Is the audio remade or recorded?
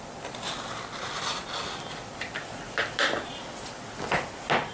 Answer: recorded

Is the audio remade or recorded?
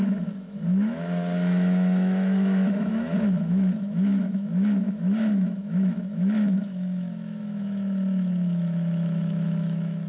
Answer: remade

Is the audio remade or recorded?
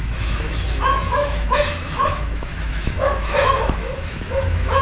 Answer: remade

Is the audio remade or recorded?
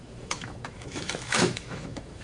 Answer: remade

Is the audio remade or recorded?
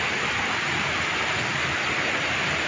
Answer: recorded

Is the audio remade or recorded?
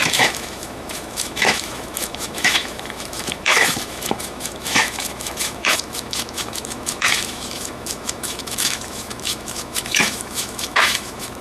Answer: remade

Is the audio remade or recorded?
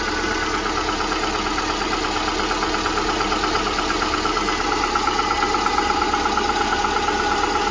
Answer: recorded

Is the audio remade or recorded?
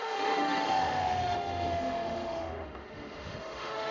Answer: remade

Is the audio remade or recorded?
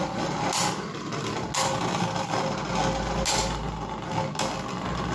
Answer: recorded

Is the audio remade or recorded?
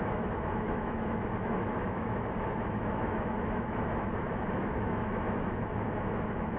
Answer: remade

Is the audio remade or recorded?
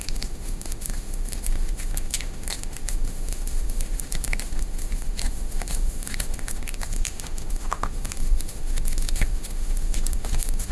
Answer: remade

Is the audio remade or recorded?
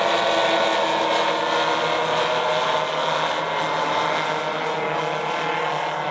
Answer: recorded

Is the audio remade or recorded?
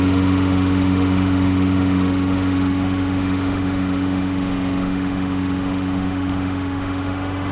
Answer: remade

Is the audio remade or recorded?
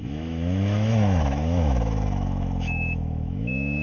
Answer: remade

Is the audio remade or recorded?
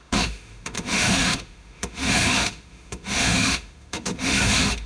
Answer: remade